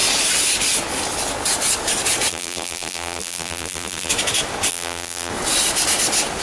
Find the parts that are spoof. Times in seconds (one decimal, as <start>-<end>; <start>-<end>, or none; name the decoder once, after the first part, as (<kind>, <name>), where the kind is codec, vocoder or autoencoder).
2.3-4.1 (vocoder, BigVGAN v2); 4.7-5.3